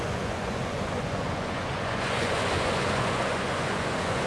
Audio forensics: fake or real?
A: fake